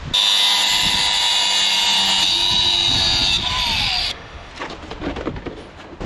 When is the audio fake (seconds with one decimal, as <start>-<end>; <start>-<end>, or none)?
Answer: 4.0-4.5